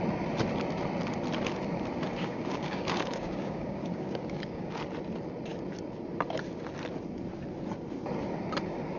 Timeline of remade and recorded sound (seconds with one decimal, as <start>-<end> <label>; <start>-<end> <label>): 0.0-2.1 recorded; 2.1-4.8 remade; 4.8-9.0 recorded

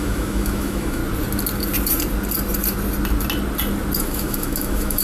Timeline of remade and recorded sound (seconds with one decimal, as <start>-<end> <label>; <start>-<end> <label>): 0.0-1.0 remade; 1.0-4.0 recorded; 4.0-5.0 remade

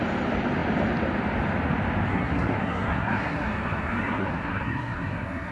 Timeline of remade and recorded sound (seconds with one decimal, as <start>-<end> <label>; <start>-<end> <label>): 0.0-2.1 recorded; 2.1-5.5 remade

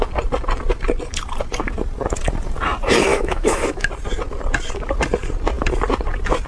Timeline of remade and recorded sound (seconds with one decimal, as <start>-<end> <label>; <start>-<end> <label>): 0.0-3.1 recorded; 3.1-3.9 remade; 3.9-6.5 recorded

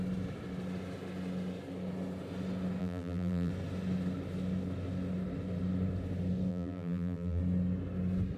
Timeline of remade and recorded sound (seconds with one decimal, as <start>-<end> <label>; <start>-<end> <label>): 0.0-2.8 recorded; 2.8-3.5 remade; 3.5-6.5 recorded; 6.5-7.4 remade; 7.4-8.4 recorded

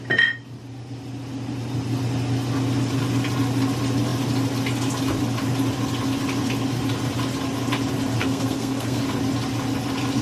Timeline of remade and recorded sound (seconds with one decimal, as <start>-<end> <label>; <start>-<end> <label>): 0.0-8.2 recorded; 8.2-9.0 remade; 9.0-10.2 recorded

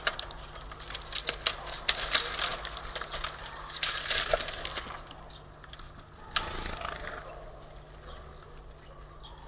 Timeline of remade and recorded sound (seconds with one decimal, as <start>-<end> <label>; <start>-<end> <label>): 0.0-9.5 recorded

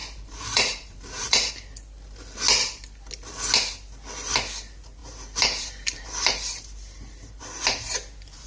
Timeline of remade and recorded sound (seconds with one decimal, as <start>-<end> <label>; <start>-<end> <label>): 0.0-1.5 remade; 1.5-5.0 recorded; 5.0-7.4 remade; 7.4-8.5 recorded